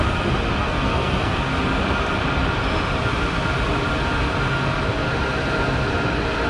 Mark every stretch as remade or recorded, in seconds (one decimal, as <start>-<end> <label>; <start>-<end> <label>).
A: 0.0-0.6 recorded; 0.6-1.4 remade; 1.4-6.5 recorded